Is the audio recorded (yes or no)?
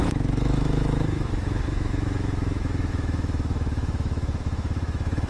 no